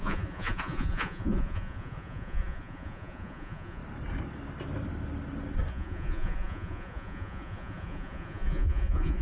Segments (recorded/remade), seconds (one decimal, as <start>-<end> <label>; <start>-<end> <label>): 0.0-3.8 remade; 3.8-5.7 recorded; 5.7-9.2 remade